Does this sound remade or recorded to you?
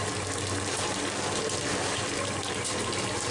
recorded